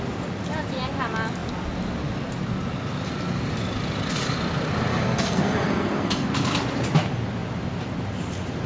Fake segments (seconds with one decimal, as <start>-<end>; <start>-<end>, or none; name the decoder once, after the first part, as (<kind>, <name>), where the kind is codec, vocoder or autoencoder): 4.9-6.3 (codec, SNAC)